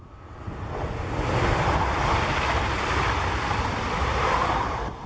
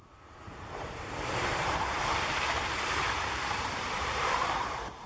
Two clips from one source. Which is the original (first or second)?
first